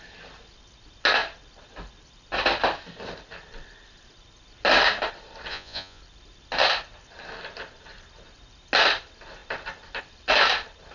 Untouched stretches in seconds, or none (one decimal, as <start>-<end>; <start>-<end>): 0.0-5.5; 6.0-10.9